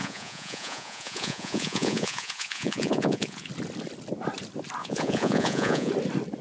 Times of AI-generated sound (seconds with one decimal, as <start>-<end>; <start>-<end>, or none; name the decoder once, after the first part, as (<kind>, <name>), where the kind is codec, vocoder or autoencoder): 0.0-3.5 (vocoder, Vocos); 4.8-5.9